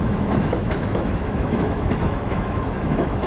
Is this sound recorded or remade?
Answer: remade